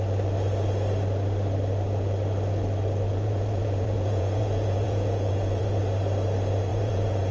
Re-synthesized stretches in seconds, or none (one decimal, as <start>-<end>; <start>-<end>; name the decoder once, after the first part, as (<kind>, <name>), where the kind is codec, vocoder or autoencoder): 3.1-5.8 (vocoder, Vocos); 6.7-7.3